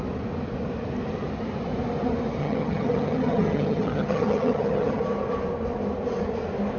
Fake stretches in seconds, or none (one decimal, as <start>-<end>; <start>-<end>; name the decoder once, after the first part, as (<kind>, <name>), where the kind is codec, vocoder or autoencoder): 2.4-5.0 (vocoder, HiFi-GAN)